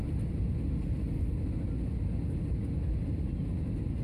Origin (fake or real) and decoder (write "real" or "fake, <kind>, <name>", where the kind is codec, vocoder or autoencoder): real